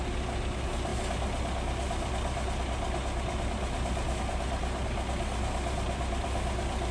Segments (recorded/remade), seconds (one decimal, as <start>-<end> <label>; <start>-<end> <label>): 0.0-6.9 recorded